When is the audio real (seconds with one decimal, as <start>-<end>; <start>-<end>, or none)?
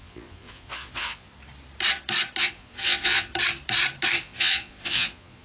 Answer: 1.3-2.4; 3.3-4.2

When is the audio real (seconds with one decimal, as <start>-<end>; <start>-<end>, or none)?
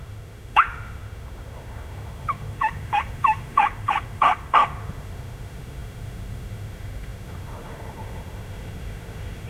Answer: none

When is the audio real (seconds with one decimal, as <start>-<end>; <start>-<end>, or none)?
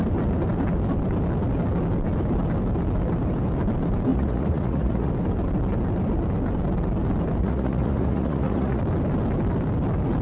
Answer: 0.0-4.1; 5.1-7.4; 8.8-10.2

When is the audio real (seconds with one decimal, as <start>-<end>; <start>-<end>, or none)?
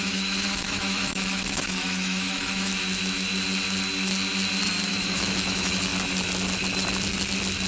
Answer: 2.7-4.9; 5.9-7.7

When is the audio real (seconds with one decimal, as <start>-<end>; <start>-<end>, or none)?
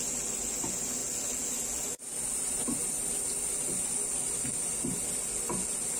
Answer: 0.0-6.0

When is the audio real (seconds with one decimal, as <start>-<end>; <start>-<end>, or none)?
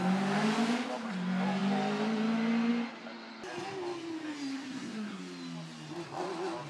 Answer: 0.0-4.5; 5.2-6.7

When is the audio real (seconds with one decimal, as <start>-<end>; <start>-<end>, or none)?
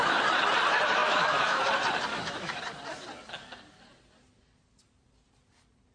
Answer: 0.0-1.0; 1.6-2.1; 2.6-5.9